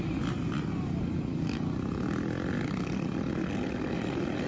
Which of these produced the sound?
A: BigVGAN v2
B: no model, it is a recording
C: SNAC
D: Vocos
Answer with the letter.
B